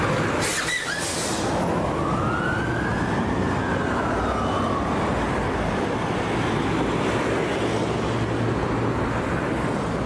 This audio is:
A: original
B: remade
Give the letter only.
A